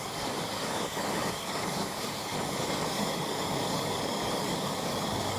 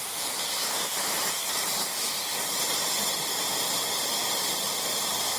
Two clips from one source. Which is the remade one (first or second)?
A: first